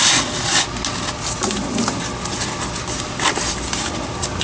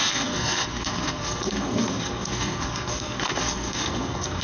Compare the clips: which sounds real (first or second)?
first